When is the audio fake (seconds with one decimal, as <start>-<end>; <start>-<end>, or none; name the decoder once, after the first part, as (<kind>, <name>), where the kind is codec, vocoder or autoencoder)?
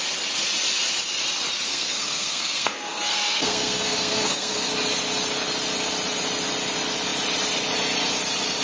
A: 1.7-4.7 (codec, SNAC)